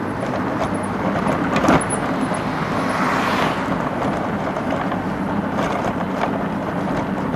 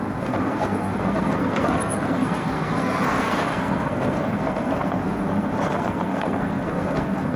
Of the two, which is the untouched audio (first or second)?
first